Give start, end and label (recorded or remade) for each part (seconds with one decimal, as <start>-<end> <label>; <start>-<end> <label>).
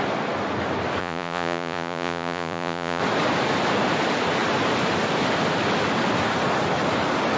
0.0-1.0 recorded; 1.0-3.0 remade; 3.0-7.4 recorded